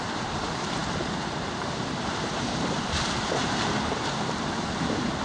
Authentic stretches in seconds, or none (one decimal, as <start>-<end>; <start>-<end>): none